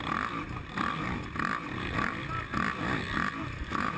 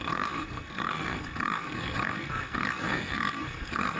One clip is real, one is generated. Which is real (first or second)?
first